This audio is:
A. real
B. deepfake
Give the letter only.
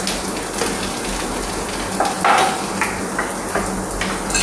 A